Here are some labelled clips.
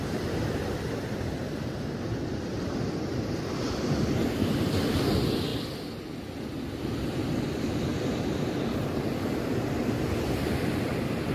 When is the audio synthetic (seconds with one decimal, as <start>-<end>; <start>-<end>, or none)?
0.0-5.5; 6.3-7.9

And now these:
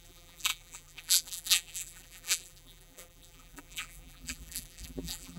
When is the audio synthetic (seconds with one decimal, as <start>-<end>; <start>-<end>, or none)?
0.0-5.4

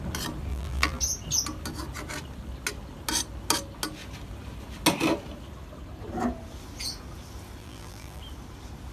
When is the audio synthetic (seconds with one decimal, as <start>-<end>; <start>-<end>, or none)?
0.5-1.0; 7.6-8.2

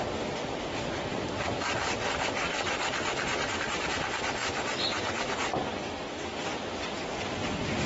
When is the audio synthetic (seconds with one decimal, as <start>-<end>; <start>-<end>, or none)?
1.1-3.8; 4.4-6.6

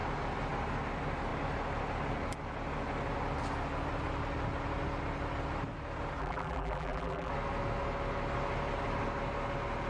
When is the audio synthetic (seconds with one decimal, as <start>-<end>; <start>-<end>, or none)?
6.2-7.3

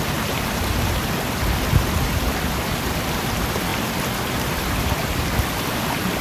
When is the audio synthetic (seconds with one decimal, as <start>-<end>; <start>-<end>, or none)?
0.0-3.7; 4.5-6.2

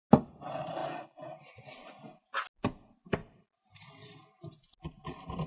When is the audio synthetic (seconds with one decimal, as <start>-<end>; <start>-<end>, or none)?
3.2-3.9